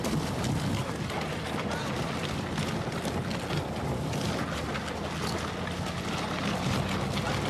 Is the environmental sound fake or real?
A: real